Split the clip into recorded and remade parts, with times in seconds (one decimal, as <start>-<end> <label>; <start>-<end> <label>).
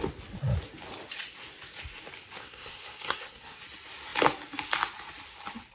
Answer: 0.0-2.4 recorded; 2.4-3.6 remade; 3.6-5.7 recorded